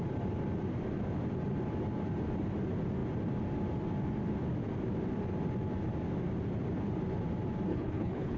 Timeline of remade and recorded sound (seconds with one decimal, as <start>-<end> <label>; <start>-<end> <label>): 0.0-7.7 recorded; 7.7-8.4 remade